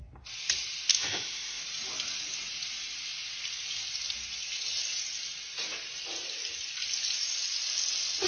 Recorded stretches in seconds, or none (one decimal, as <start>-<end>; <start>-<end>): 0.0-0.9; 1.6-8.3